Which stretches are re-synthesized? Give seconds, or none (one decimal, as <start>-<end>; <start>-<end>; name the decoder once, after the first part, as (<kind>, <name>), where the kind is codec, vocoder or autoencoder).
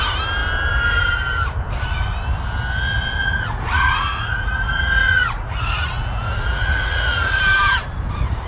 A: 3.2-7.4 (vocoder, Vocos)